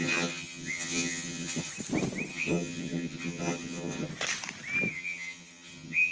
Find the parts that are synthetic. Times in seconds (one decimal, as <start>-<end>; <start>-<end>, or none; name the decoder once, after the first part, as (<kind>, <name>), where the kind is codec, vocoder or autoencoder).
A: 0.0-1.7 (vocoder, HiFi-GAN); 2.3-4.1; 4.9-6.1